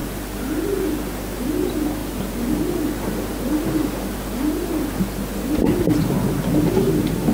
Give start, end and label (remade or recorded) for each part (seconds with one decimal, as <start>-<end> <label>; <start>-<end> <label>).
0.0-7.3 recorded